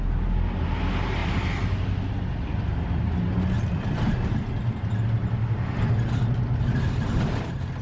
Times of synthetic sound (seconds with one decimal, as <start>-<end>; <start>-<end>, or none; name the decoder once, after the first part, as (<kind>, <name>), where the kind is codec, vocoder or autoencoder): none